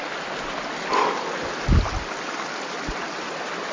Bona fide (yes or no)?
yes